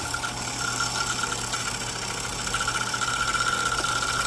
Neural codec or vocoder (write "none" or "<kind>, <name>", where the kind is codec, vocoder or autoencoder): none